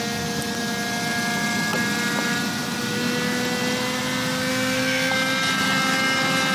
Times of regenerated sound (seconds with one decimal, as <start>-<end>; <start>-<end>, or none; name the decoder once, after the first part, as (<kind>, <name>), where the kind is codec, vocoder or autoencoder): 4.5-5.1 (codec, SNAC)